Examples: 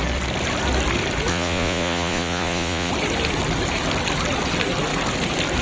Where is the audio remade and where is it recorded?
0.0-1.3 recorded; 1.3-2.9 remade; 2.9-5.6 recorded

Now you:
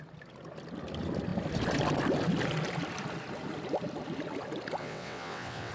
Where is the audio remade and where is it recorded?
0.0-4.8 recorded; 4.8-5.7 remade